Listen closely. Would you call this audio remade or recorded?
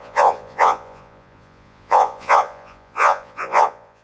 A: remade